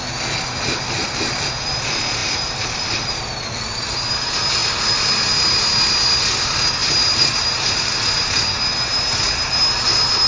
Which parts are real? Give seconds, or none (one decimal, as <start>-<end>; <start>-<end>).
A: 0.0-2.2; 3.2-6.8; 7.9-10.3